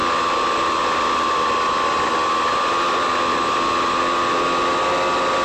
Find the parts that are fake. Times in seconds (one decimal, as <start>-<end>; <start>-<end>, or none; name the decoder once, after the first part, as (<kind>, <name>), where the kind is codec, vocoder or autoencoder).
0.0-2.1 (vocoder, BigVGAN v2)